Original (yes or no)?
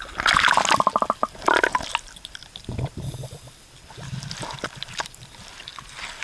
yes